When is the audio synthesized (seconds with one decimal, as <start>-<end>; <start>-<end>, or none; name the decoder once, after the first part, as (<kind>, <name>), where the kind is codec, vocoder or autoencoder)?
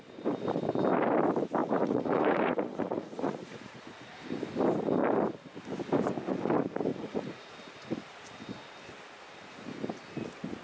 1.6-3.8 (vocoder, Vocos); 6.9-7.5